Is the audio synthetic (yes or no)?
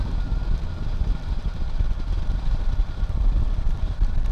no